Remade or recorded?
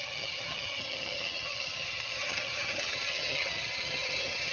remade